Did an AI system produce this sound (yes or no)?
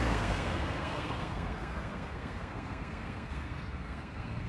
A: yes